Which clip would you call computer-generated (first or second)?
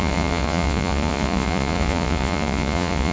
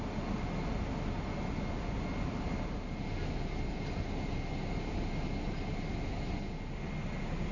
first